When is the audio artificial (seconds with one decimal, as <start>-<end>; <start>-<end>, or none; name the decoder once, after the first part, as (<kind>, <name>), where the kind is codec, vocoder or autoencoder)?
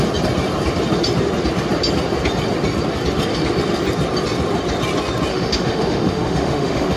5.3-7.0 (autoencoder, DAC-VAE)